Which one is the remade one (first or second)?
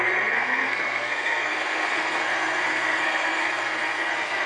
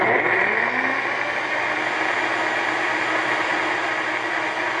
first